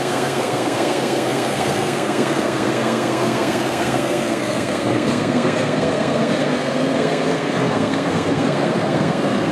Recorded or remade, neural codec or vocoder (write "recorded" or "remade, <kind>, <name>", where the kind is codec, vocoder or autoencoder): remade, codec, SNAC